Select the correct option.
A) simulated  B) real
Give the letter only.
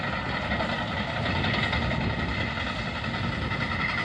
B